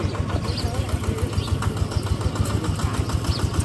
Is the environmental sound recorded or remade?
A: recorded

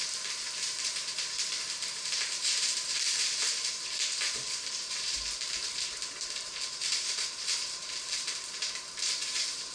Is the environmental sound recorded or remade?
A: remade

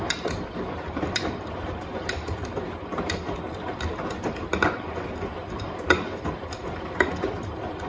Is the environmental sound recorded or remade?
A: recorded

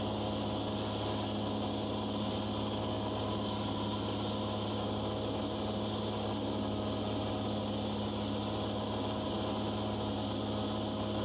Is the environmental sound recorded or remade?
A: recorded